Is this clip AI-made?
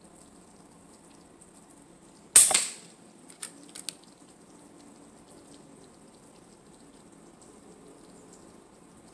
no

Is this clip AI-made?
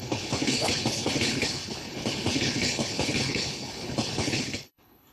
yes